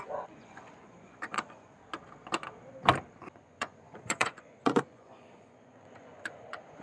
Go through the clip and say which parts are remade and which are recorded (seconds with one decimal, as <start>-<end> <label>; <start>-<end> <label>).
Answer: 0.0-1.8 remade; 1.8-3.3 recorded; 3.3-6.8 remade